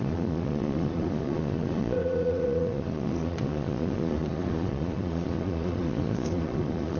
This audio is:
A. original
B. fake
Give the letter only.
B